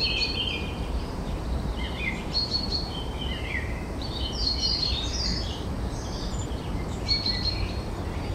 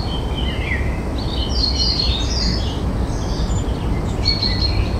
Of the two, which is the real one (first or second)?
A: second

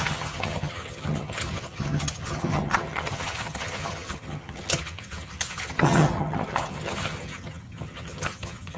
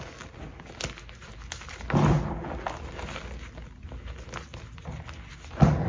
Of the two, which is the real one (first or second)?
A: second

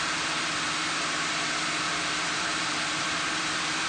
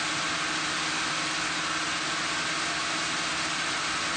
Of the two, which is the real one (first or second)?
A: second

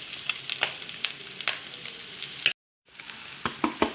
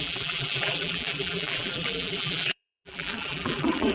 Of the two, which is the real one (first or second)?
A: first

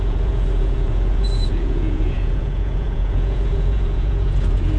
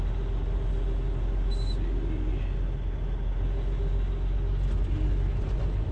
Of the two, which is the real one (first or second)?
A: second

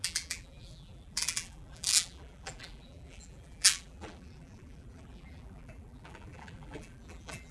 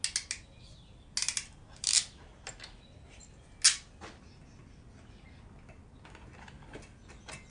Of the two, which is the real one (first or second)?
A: second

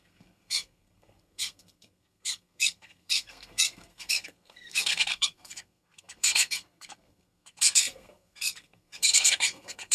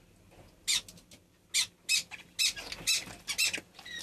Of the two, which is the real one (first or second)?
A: second